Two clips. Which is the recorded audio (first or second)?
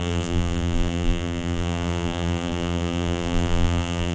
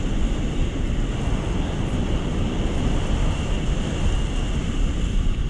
second